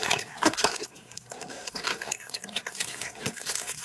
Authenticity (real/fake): fake